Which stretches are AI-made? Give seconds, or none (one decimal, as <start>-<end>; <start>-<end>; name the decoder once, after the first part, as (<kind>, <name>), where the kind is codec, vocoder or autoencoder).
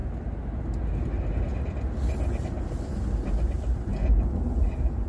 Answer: none